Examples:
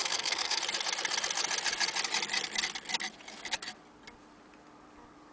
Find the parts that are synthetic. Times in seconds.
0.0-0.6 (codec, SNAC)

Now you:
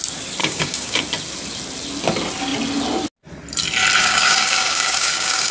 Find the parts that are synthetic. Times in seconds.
0.4-1.0 (codec, DAC); 4.0-5.5

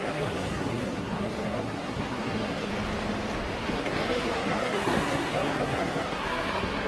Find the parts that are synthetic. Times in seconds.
0.0-2.7 (codec, SNAC); 3.6-6.9